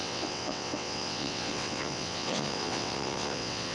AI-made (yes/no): yes